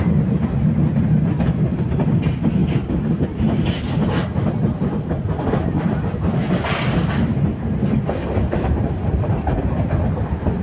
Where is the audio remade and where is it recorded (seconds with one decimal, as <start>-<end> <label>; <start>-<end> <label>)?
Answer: 0.0-10.6 recorded